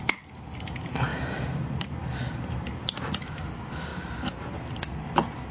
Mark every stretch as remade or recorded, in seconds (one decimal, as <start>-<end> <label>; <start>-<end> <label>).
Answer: 0.0-1.1 recorded; 1.1-2.7 remade; 2.7-3.9 recorded; 3.9-4.6 remade; 4.6-5.5 recorded